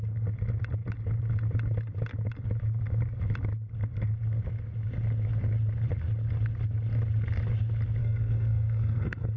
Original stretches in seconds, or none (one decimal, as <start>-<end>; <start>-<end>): 0.0-8.0